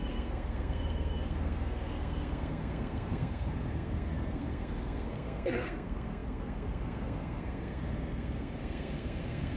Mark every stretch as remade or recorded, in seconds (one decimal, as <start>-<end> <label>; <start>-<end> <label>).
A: 0.0-9.6 remade